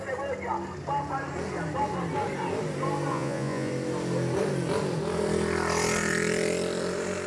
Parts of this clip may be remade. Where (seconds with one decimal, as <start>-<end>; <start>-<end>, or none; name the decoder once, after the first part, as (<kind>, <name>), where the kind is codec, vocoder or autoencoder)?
3.1-3.7 (vocoder, Vocos)